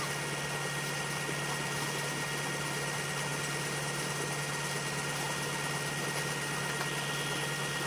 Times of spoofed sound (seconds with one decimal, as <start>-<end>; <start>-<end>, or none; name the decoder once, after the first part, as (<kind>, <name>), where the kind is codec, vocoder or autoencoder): none